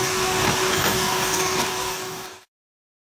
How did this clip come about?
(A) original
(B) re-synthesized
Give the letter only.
B